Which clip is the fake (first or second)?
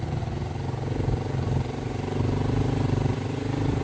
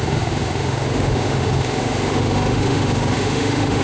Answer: second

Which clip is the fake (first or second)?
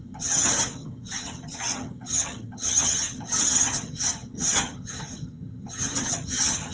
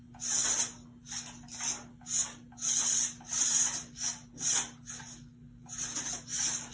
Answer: first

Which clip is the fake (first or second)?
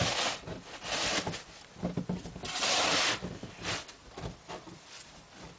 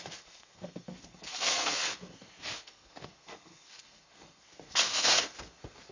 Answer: second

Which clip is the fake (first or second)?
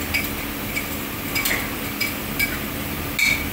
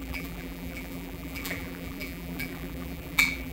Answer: second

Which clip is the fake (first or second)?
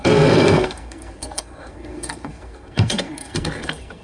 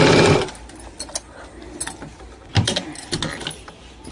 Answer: first